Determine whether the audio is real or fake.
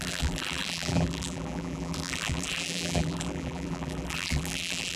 fake